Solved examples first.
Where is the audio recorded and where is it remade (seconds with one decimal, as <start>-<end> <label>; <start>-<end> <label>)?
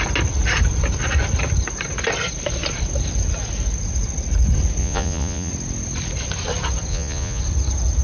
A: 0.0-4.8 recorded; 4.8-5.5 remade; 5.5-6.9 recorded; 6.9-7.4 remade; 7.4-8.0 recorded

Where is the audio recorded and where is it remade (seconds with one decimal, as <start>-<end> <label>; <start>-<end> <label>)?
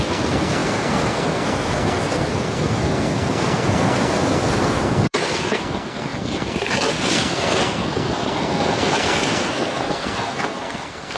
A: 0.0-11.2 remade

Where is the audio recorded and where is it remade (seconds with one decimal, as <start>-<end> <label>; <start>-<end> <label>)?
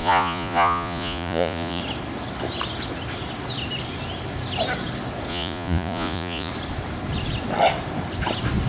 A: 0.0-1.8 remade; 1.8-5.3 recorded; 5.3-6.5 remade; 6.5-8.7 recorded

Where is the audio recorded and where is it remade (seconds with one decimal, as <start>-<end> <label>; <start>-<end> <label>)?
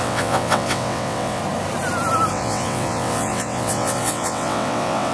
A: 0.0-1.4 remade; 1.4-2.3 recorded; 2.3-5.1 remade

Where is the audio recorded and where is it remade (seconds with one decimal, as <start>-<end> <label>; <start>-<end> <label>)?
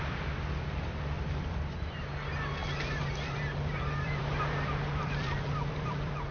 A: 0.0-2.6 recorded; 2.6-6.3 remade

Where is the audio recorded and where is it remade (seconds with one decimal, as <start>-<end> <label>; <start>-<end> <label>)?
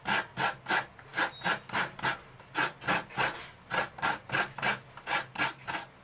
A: 0.0-6.0 recorded